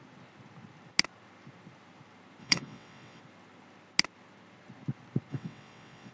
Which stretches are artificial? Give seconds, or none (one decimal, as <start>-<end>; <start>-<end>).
2.4-3.2; 5.3-6.1